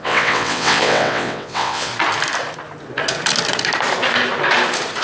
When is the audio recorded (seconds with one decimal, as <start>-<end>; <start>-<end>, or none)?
1.9-5.0